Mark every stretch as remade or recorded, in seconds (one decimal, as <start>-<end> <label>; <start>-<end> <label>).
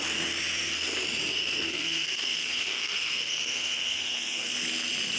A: 0.0-1.4 recorded; 1.4-4.5 remade; 4.5-5.2 recorded